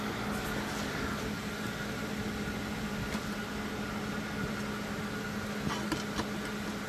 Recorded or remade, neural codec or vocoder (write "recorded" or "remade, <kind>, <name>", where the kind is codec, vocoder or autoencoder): recorded